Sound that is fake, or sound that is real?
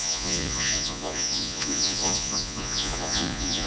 fake